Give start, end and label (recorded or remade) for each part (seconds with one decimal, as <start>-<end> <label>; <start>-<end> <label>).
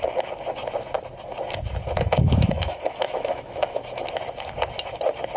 0.0-1.8 recorded; 1.8-4.0 remade; 4.0-5.4 recorded